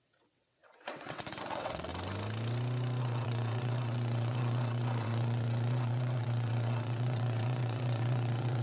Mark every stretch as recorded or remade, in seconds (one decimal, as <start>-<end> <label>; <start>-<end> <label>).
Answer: 0.0-1.9 remade; 1.9-3.0 recorded; 3.0-8.6 remade